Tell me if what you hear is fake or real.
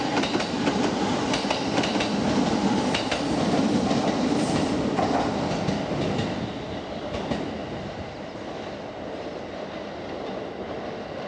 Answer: real